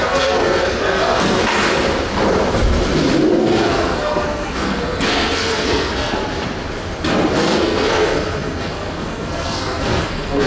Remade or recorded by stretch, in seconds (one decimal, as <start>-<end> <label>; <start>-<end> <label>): 0.0-1.4 remade; 1.4-3.3 recorded; 3.3-6.2 remade; 6.2-7.3 recorded; 7.3-10.5 remade